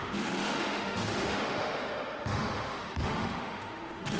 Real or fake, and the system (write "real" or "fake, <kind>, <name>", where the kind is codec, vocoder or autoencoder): fake, autoencoder, DAC-VAE